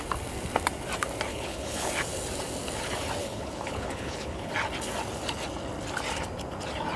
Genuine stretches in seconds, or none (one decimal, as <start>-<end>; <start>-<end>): 0.0-1.3; 1.9-3.2; 4.5-7.0